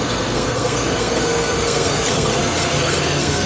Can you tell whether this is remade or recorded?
remade